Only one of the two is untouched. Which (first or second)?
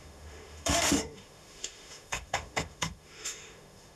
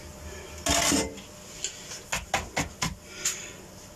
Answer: second